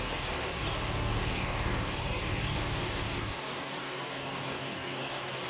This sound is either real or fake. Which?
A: fake